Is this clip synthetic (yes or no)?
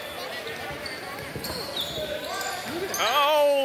no